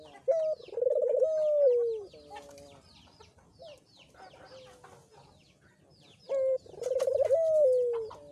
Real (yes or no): yes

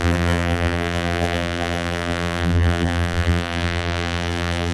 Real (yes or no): no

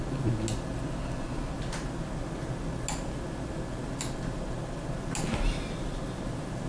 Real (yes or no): yes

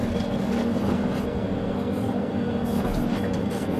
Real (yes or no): no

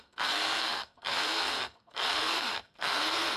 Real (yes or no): no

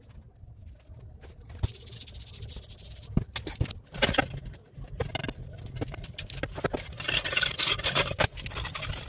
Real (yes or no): yes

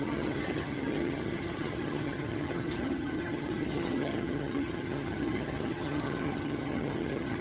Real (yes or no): no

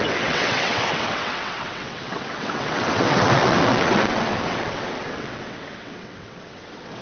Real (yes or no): no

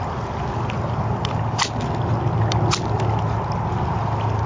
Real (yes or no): yes